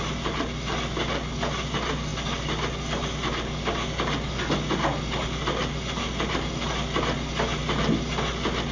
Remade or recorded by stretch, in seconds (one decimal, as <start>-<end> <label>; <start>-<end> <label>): 0.0-8.7 recorded